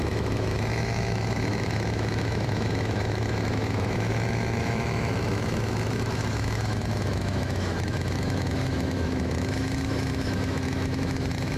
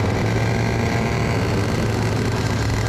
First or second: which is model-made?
first